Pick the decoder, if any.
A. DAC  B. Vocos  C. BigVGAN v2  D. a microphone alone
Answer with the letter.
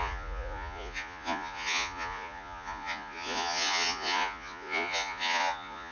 B